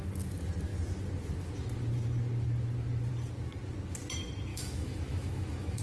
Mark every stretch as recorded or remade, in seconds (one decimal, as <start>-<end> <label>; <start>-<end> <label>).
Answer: 0.0-4.5 recorded; 4.5-5.8 remade